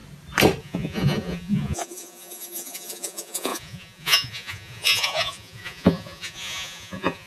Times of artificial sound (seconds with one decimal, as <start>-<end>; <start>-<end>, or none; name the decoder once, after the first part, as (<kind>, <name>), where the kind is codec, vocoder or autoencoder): 0.6-7.3 (vocoder, Vocos)